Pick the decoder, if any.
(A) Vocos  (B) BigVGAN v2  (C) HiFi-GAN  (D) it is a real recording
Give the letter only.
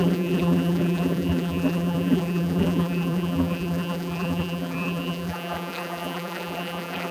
B